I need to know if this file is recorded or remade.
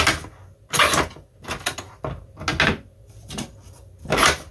recorded